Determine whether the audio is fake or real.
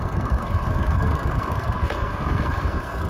fake